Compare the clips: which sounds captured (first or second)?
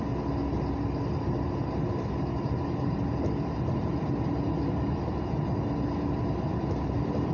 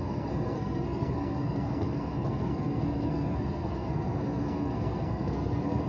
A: first